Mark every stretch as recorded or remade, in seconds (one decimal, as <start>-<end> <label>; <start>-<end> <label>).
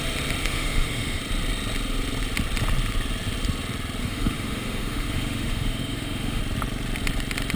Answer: 0.0-0.4 recorded; 0.4-1.2 remade; 1.2-4.0 recorded; 4.0-6.4 remade; 6.4-7.6 recorded